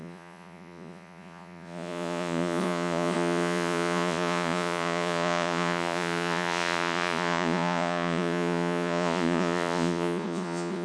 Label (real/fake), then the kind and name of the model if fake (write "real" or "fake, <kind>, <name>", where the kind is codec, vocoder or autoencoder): fake, vocoder, Vocos